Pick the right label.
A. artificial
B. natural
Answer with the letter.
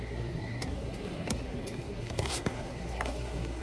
A